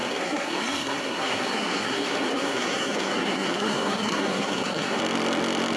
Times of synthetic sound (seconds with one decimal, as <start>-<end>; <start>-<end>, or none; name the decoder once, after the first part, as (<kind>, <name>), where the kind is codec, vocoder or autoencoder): 0.0-5.0 (codec, SNAC)

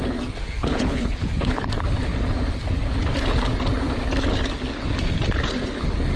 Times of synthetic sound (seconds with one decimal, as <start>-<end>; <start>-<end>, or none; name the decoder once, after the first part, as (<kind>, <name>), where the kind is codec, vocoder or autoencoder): 0.6-1.7 (codec, HILCodec)

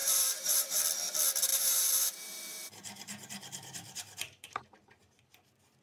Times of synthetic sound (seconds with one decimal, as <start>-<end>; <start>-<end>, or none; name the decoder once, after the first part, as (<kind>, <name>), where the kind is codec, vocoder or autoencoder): 0.0-0.8 (vocoder, BigVGAN v2); 1.5-5.0